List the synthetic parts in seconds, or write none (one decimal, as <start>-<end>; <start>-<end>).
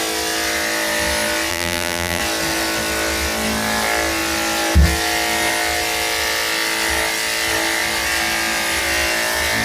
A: 1.5-2.2